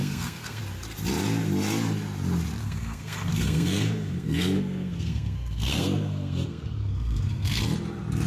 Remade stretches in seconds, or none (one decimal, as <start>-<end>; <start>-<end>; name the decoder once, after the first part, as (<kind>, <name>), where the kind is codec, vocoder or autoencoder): 0.0-0.6 (codec, SNAC); 2.6-7.6